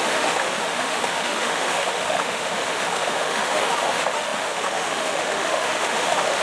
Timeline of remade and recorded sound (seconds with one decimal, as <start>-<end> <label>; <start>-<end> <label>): 0.0-6.4 remade